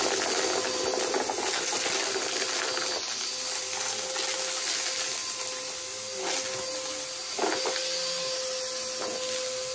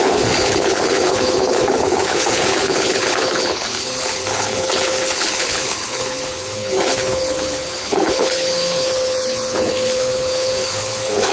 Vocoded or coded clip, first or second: second